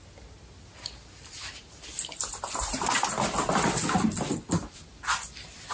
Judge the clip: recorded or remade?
recorded